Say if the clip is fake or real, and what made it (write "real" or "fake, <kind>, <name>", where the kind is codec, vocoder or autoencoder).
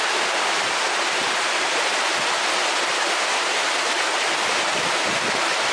real